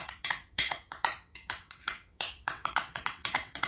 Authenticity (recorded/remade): remade